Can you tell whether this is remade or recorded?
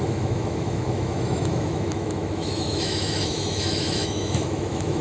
remade